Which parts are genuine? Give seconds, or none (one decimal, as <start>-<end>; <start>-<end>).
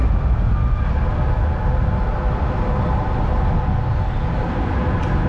0.0-5.3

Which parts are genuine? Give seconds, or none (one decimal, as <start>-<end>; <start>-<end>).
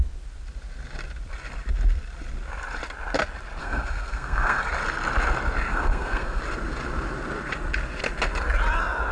0.0-3.6; 4.7-5.7; 6.4-9.1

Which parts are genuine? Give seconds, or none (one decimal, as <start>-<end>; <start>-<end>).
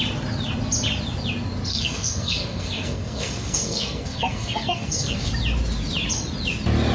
0.0-1.7; 5.3-6.9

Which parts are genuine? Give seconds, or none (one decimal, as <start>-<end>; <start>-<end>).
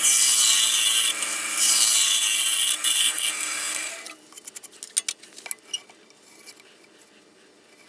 0.0-3.0; 3.9-7.9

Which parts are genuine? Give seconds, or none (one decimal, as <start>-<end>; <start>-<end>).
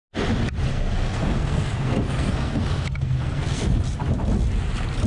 0.0-0.7; 3.8-5.1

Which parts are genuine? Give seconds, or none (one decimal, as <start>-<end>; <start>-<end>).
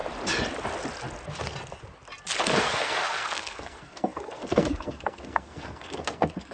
0.0-2.4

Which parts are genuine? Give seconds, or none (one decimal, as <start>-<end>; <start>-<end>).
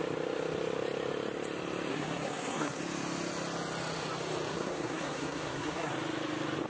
0.0-1.9; 2.8-4.5; 5.9-6.7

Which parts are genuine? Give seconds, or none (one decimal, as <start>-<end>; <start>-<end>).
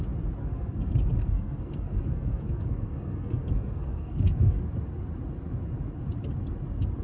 0.0-0.4; 4.6-7.0